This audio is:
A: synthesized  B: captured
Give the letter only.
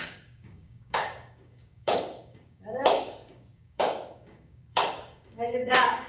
A